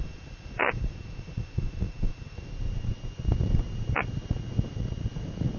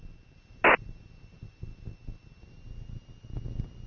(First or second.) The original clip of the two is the second